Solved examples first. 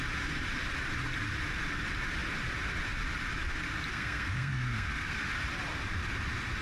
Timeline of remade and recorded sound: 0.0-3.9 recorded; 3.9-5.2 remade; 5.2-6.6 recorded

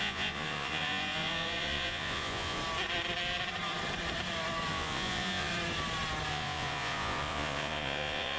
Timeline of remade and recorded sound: 0.0-2.6 remade; 2.6-4.7 recorded; 4.7-5.5 remade; 5.5-6.3 recorded; 6.3-8.4 remade